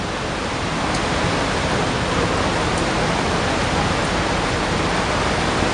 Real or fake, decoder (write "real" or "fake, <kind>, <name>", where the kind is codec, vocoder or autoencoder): real